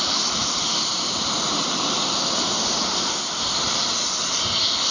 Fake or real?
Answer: fake